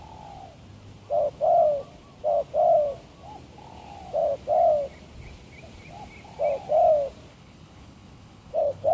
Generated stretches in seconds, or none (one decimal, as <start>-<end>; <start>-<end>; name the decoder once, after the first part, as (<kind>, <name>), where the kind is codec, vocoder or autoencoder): 7.3-8.9 (codec, HILCodec)